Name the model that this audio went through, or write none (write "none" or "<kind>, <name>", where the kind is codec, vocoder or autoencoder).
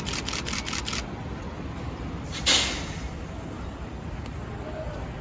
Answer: none